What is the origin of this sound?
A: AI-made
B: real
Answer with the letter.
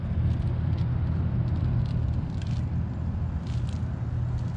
B